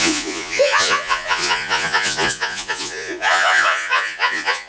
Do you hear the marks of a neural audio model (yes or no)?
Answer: yes